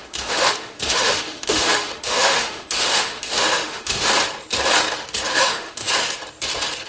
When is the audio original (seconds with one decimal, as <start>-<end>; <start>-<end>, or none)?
4.1-5.3; 5.9-6.9